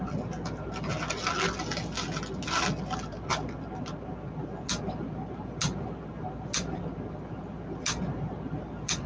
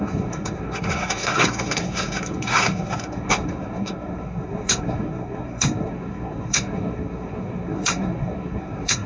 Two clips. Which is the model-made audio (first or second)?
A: second